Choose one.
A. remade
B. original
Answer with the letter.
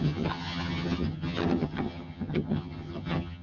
A